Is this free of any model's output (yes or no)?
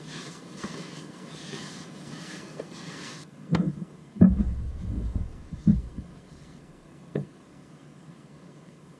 no